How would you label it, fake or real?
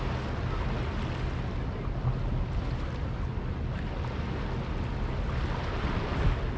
real